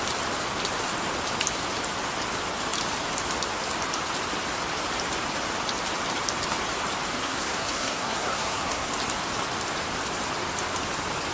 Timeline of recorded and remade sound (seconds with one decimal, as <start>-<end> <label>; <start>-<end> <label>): 0.0-7.2 recorded; 7.2-8.9 remade; 8.9-11.3 recorded